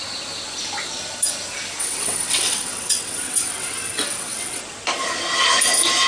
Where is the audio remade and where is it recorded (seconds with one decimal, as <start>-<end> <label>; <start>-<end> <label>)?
0.0-1.8 recorded; 1.8-4.6 remade; 4.6-6.1 recorded